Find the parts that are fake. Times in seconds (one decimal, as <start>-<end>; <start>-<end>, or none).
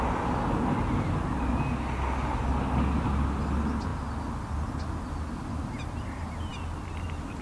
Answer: none